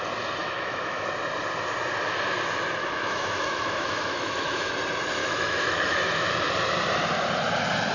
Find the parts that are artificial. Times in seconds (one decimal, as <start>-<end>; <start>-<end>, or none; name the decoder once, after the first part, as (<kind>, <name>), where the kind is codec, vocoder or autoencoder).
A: 0.4-1.1 (autoencoder, DAC-VAE); 2.8-4.7; 5.2-6.3